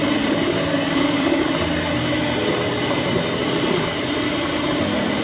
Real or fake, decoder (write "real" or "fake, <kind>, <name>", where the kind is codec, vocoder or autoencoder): fake, vocoder, BigVGAN v2